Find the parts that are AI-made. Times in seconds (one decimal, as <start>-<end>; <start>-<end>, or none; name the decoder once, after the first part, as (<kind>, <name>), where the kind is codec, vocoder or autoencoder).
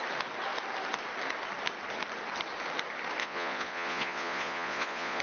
3.2-5.2 (vocoder, Vocos)